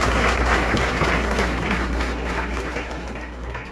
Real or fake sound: fake